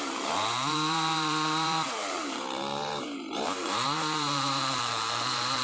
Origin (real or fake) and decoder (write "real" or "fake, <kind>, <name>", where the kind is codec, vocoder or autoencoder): fake, vocoder, BigVGAN v2